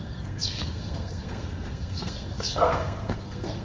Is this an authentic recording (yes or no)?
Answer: no